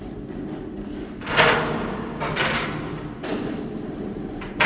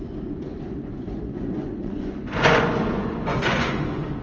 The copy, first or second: second